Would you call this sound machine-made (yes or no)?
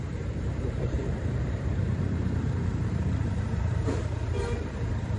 yes